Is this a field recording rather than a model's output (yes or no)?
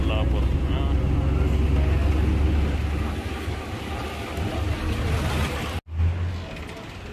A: yes